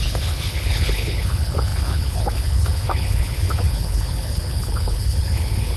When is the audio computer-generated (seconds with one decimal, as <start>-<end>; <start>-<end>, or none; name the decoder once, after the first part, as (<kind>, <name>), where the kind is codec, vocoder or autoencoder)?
0.0-5.8 (codec, HILCodec)